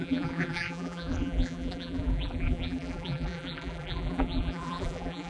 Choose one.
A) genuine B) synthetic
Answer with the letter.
B